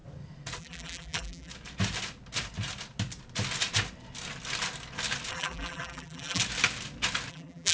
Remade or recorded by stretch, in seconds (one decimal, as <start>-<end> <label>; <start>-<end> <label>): 0.0-0.6 recorded; 0.6-1.5 remade; 1.5-5.3 recorded; 5.3-6.4 remade; 6.4-7.3 recorded; 7.3-7.7 remade